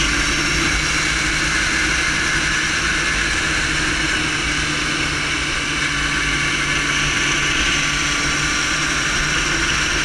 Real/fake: real